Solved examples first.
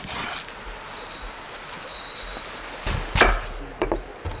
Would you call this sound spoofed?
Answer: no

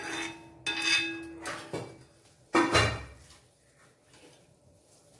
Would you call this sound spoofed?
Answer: no